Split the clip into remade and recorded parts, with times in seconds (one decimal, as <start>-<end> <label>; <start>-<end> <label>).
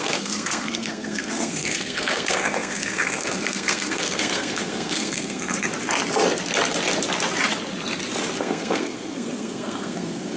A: 0.0-5.7 remade; 5.7-8.4 recorded; 8.4-10.4 remade